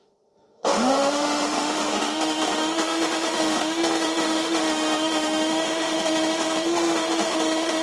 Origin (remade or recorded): remade